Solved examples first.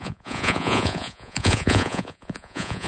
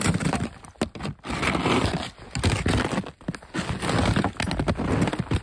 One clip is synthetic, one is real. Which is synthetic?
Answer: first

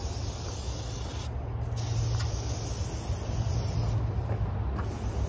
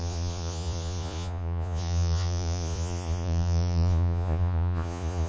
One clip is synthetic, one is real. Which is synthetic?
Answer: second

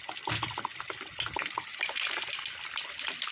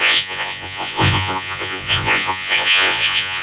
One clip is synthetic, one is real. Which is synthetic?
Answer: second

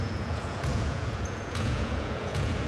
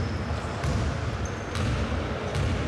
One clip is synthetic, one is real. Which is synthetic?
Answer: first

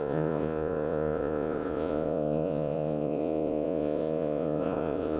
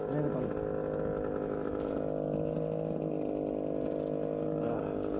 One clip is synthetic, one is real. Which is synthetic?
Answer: first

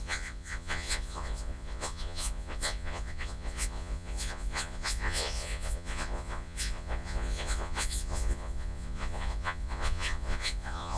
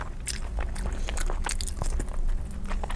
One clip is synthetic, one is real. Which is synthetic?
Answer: first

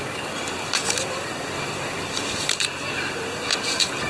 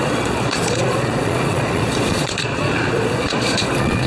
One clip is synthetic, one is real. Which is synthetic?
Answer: second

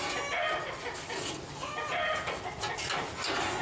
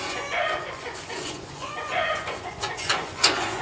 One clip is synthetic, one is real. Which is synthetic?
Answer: second